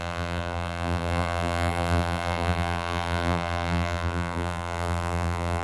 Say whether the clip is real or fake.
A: fake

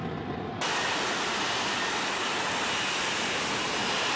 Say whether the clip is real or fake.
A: real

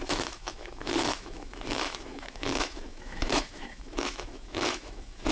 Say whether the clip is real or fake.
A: fake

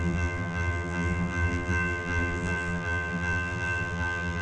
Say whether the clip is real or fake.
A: fake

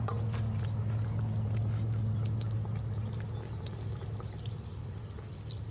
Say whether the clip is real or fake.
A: real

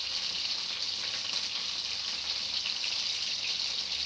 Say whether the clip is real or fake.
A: real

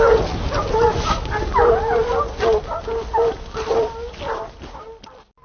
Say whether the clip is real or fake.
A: real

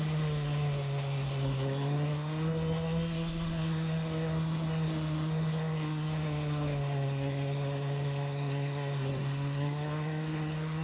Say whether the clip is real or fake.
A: fake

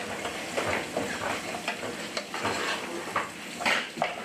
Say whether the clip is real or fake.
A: real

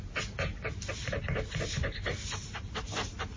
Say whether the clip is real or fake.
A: real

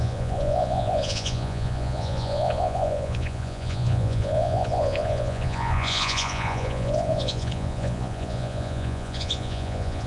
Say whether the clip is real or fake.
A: fake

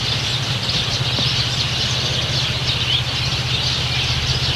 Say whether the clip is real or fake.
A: real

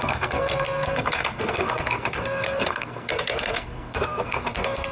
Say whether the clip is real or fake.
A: fake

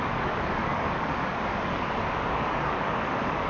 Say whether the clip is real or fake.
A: fake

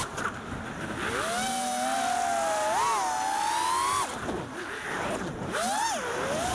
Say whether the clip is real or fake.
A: real